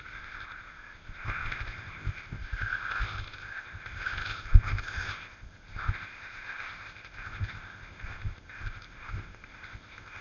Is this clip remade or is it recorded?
remade